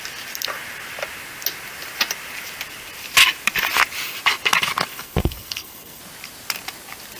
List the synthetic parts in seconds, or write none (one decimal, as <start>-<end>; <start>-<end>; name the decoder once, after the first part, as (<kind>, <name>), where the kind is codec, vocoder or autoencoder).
4.9-6.0 (codec, SNAC)